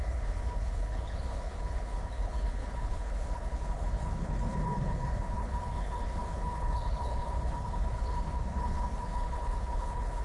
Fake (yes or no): yes